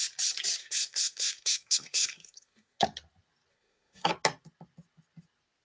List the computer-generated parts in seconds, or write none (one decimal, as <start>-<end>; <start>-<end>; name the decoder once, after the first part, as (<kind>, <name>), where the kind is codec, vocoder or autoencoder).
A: 0.6-2.8 (codec, SNAC); 3.5-4.1